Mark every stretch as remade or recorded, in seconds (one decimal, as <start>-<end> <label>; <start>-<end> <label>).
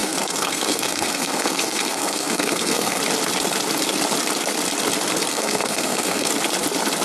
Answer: 0.0-3.0 remade; 3.0-5.3 recorded; 5.3-6.3 remade; 6.3-7.0 recorded